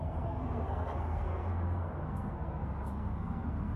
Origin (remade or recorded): remade